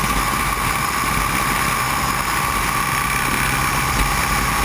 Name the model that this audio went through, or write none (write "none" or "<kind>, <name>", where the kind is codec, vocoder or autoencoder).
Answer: none